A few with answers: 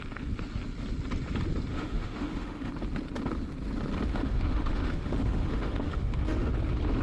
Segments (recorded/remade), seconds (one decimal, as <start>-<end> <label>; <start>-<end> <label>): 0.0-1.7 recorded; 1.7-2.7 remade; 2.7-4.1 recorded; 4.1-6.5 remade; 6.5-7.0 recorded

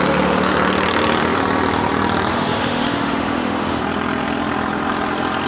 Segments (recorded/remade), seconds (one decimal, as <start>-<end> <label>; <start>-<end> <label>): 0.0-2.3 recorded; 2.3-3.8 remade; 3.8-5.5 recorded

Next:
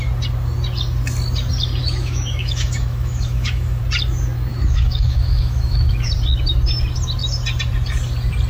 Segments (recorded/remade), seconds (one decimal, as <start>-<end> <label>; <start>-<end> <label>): 0.0-1.8 recorded; 1.8-3.8 remade; 3.8-4.5 recorded; 4.5-6.1 remade; 6.1-8.5 recorded